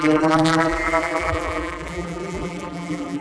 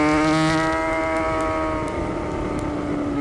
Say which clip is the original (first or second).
second